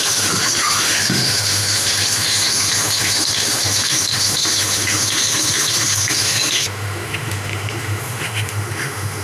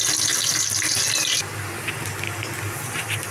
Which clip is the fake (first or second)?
first